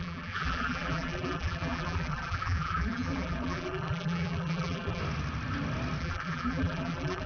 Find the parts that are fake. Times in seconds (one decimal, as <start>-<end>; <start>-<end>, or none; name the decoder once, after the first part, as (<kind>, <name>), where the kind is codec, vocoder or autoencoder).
0.0-5.0 (vocoder, BigVGAN v2); 6.0-7.3